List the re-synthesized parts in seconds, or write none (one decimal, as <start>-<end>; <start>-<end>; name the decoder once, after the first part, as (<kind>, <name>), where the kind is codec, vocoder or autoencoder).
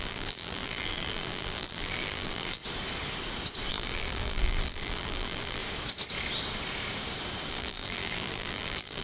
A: 0.0-2.6 (vocoder, BigVGAN v2); 3.7-5.6; 7.5-9.0